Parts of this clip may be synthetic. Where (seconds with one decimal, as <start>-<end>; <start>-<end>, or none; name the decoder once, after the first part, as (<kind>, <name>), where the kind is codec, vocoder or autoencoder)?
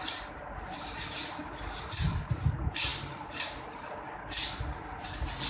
none